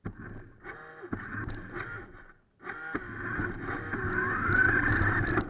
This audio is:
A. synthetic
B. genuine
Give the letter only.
B